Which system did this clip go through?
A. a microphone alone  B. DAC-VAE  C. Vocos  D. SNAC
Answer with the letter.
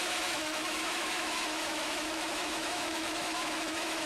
B